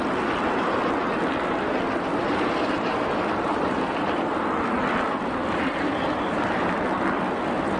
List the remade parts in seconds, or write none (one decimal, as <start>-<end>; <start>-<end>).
2.2-4.4; 5.4-6.7